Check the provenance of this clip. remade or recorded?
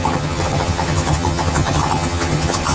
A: remade